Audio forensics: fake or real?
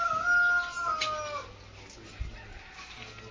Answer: real